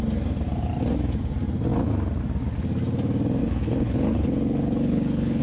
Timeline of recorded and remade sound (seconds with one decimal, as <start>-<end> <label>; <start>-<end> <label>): 0.0-3.4 recorded; 3.4-5.4 remade